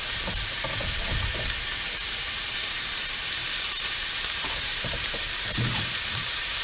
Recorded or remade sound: remade